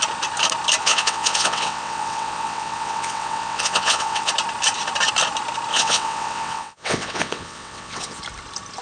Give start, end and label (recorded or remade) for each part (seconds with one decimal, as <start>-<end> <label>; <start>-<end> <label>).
0.0-0.8 recorded; 0.8-4.3 remade; 4.3-5.7 recorded; 5.7-8.2 remade; 8.2-8.8 recorded